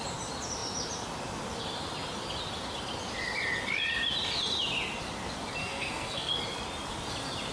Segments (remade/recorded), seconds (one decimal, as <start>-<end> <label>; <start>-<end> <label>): 0.0-5.6 recorded; 5.6-6.3 remade; 6.3-7.5 recorded